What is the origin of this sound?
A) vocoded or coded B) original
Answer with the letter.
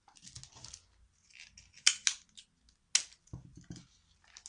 B